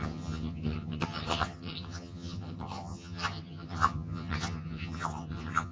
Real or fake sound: fake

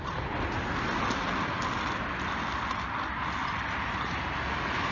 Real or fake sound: real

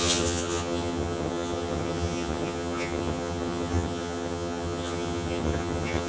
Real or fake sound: fake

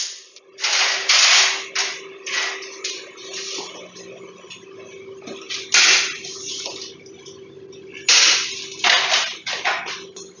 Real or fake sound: real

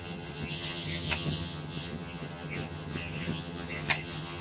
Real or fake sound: fake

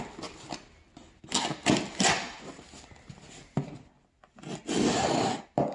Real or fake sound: real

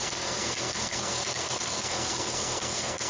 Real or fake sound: fake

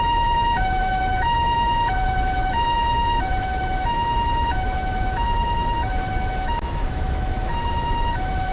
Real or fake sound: fake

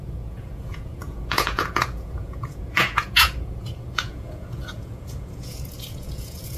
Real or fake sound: fake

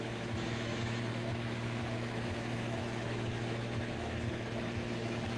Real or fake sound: fake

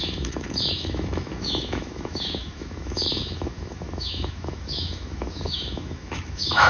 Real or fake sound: fake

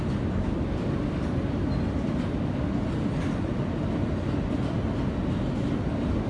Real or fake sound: real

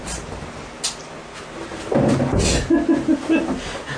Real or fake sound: real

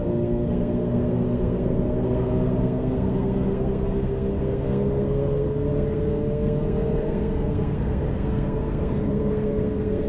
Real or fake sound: fake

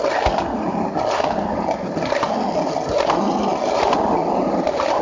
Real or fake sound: real